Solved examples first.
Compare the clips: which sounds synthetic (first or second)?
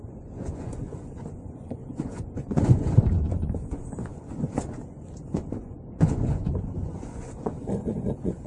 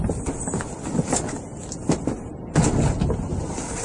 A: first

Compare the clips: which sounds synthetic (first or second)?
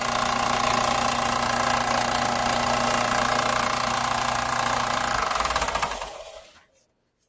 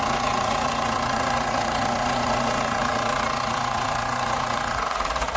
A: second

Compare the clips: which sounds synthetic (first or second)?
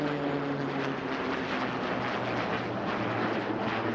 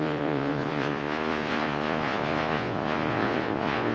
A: second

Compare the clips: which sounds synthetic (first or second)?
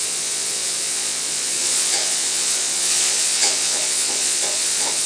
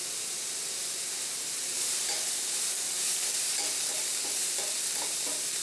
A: first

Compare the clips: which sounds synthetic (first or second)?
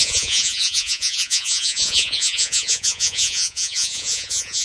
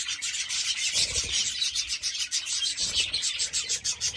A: first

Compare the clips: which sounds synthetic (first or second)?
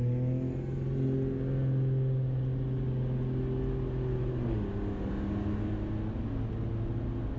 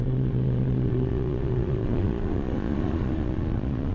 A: second